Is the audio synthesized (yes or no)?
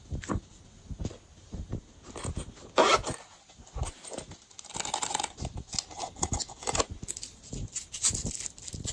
no